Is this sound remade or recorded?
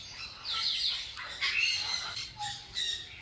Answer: recorded